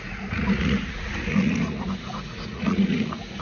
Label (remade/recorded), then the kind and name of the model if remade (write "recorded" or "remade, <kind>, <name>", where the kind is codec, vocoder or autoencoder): remade, vocoder, Vocos